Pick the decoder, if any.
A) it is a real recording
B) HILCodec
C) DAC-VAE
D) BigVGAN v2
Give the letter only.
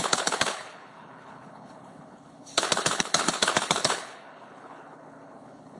B